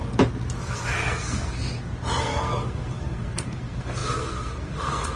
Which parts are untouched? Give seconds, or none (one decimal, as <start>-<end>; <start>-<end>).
0.0-0.6; 1.6-2.2